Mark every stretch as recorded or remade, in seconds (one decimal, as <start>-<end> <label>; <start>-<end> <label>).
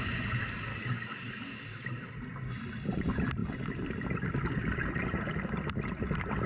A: 0.0-0.7 recorded; 0.7-1.3 remade; 1.3-6.5 recorded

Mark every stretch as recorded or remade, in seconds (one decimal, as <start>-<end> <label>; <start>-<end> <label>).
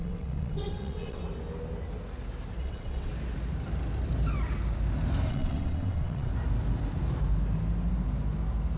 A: 0.0-1.2 remade; 1.2-2.6 recorded; 2.6-3.1 remade; 3.1-5.3 recorded; 5.3-6.3 remade; 6.3-8.8 recorded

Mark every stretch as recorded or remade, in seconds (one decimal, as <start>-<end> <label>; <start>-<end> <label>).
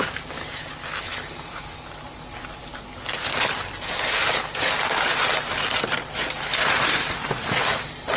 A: 0.0-8.2 recorded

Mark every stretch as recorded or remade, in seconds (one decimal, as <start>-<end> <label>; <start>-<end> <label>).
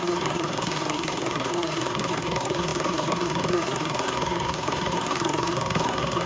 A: 0.0-6.3 remade